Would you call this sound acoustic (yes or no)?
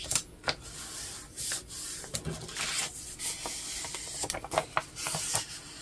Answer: yes